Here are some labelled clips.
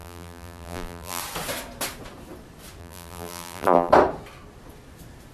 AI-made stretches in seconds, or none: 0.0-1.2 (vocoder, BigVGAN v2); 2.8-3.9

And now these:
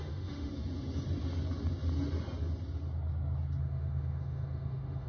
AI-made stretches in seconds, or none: 0.0-0.5 (autoencoder, DAC-VAE); 3.6-5.1

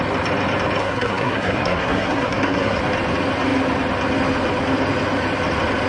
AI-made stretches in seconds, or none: 0.8-2.8 (codec, SNAC)